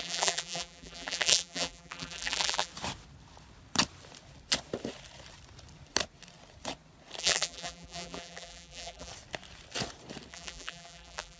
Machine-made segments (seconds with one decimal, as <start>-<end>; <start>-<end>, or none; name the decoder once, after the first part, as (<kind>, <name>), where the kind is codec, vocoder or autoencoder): 0.0-2.7 (vocoder, BigVGAN v2); 7.2-9.1; 10.3-11.4